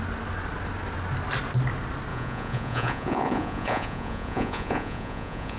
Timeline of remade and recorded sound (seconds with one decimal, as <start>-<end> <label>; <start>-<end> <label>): 0.0-2.1 recorded; 2.1-5.6 remade